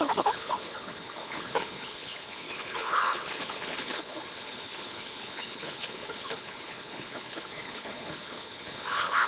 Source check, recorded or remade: remade